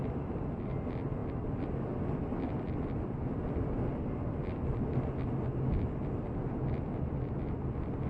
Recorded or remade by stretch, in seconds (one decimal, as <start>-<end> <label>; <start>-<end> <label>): 0.0-8.1 recorded